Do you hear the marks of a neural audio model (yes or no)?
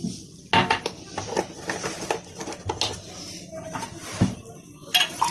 no